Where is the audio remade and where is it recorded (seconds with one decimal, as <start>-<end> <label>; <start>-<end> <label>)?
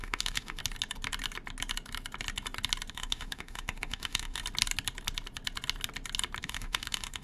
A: 0.0-0.6 remade; 0.6-2.9 recorded; 2.9-4.4 remade; 4.4-6.4 recorded; 6.4-7.2 remade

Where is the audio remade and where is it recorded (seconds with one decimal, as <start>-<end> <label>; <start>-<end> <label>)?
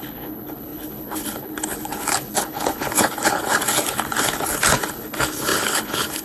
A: 0.0-6.2 remade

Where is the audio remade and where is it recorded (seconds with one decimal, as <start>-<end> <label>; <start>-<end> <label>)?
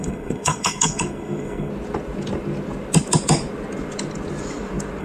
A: 0.0-1.7 remade; 1.7-5.0 recorded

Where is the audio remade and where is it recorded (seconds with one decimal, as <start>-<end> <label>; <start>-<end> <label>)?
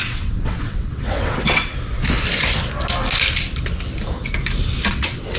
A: 0.0-1.7 remade; 1.7-4.9 recorded; 4.9-5.4 remade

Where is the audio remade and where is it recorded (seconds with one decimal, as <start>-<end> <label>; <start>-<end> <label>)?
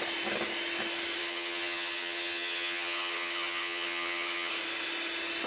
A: 0.0-1.2 recorded; 1.2-4.5 remade; 4.5-5.5 recorded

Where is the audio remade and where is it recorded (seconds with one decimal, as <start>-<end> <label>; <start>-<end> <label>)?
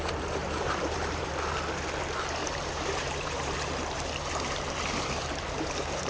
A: 0.0-0.4 recorded; 0.4-1.3 remade; 1.3-2.4 recorded; 2.4-6.1 remade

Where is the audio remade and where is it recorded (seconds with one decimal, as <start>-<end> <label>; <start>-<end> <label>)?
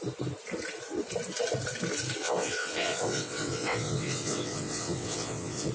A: 0.0-2.2 recorded; 2.2-5.7 remade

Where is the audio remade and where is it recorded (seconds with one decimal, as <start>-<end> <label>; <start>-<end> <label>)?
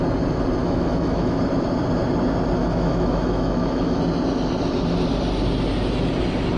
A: 0.0-0.6 recorded; 0.6-1.4 remade; 1.4-2.6 recorded; 2.6-4.0 remade; 4.0-6.6 recorded